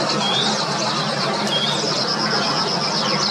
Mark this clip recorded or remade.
recorded